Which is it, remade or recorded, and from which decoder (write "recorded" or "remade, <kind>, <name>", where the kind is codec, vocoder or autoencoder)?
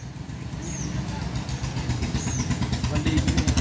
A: recorded